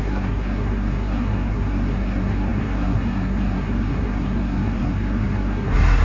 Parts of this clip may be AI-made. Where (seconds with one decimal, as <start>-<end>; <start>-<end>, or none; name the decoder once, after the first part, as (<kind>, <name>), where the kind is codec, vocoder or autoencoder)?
0.0-6.0 (codec, SNAC)

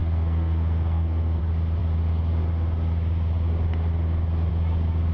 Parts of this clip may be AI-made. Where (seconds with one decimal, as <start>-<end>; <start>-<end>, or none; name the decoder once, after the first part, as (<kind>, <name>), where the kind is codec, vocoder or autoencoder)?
0.0-1.4 (codec, SNAC)